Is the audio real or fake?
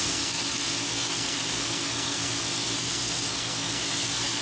fake